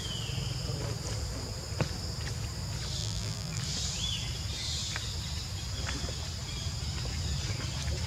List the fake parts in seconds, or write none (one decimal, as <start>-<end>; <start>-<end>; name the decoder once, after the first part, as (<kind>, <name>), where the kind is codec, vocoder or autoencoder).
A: 3.0-3.6 (vocoder, BigVGAN v2)